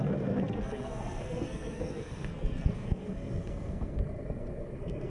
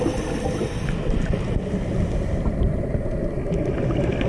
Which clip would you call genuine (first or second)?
second